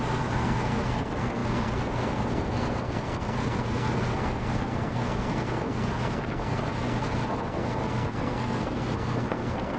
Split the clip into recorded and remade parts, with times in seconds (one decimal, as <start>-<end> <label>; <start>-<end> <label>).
0.0-9.8 remade